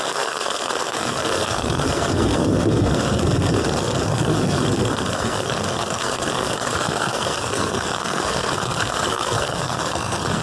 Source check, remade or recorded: remade